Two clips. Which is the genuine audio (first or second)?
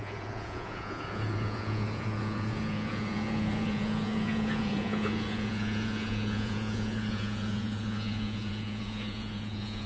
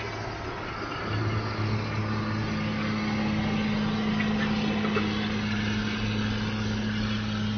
second